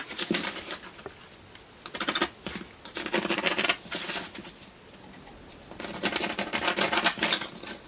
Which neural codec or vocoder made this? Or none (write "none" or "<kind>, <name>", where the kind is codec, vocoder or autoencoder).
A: none